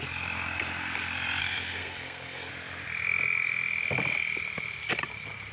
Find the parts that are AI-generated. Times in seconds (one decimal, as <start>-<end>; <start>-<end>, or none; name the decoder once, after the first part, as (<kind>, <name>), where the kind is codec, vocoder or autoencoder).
1.4-2.5 (codec, SNAC)